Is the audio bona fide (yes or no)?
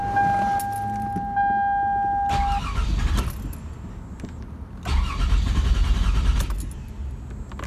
yes